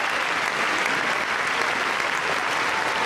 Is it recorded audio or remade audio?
recorded